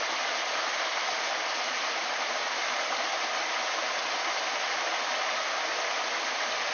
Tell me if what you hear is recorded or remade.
recorded